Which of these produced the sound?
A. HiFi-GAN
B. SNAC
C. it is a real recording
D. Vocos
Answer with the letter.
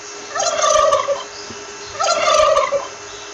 C